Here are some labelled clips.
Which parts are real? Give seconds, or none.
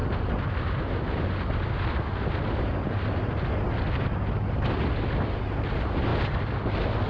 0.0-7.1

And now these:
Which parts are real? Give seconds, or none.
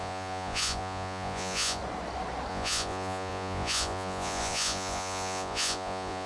1.8-2.5